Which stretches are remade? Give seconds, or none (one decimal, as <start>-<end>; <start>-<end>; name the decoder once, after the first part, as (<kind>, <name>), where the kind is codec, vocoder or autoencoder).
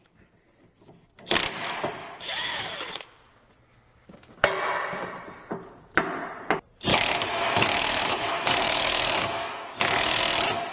2.0-2.9 (autoencoder, DAC-VAE); 6.9-10.2